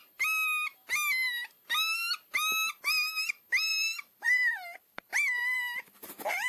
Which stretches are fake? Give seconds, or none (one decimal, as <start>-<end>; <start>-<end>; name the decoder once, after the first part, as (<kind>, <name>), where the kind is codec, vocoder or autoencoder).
3.7-6.5 (vocoder, BigVGAN v2)